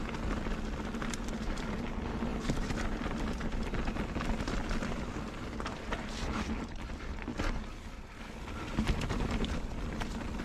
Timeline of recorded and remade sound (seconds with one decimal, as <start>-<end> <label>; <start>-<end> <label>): 0.0-2.3 recorded; 2.3-6.5 remade; 6.5-10.4 recorded